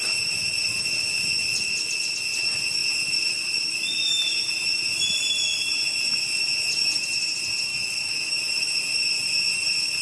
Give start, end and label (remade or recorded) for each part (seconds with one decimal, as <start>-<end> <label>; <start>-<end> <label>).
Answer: 0.0-7.7 recorded; 7.7-8.3 remade; 8.3-10.0 recorded